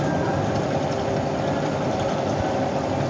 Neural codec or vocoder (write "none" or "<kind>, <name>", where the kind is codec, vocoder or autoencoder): none